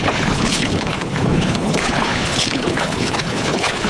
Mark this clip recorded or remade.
remade